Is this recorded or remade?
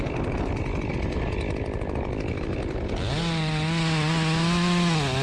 recorded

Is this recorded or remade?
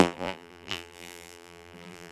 remade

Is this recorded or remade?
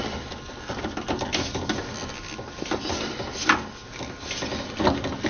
recorded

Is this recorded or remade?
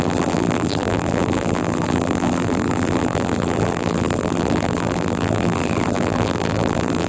remade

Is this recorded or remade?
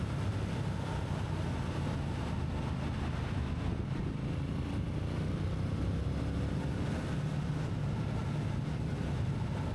recorded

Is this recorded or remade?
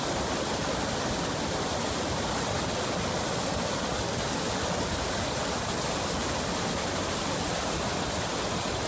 recorded